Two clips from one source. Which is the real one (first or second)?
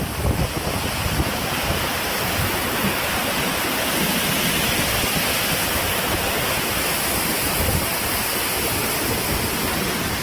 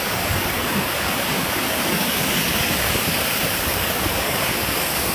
first